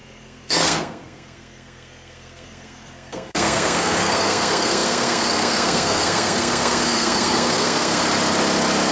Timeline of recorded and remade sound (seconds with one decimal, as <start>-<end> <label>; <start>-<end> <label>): 0.0-8.0 remade; 8.0-8.9 recorded